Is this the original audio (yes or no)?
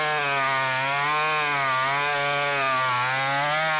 yes